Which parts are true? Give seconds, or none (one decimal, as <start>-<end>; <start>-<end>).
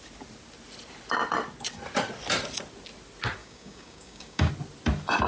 0.0-3.4; 4.5-5.3